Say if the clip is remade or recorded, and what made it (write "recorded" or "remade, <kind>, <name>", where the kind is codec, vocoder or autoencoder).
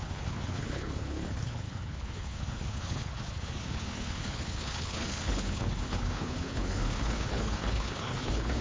remade, codec, HILCodec